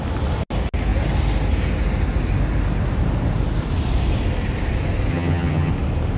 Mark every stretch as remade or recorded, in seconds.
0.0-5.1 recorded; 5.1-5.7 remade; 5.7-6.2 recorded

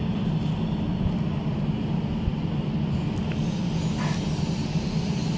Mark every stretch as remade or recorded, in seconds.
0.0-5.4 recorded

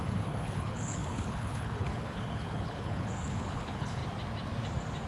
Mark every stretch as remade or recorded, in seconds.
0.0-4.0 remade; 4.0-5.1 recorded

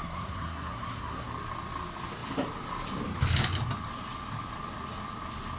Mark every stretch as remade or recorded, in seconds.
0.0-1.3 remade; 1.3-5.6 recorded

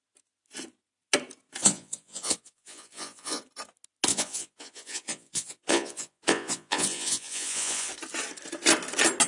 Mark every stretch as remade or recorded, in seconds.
0.0-1.6 recorded; 1.6-3.4 remade; 3.4-4.1 recorded; 4.1-7.9 remade; 7.9-9.3 recorded